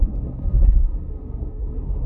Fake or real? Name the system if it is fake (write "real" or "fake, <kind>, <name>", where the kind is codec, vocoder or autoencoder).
fake, codec, SNAC